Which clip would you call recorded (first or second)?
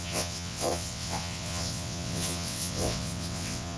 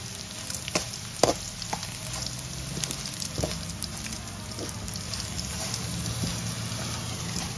second